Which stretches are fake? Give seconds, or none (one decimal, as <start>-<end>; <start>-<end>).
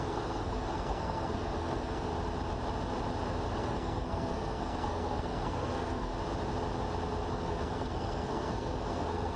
0.0-2.1; 3.6-6.1; 7.3-9.4